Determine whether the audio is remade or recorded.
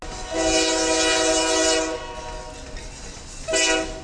recorded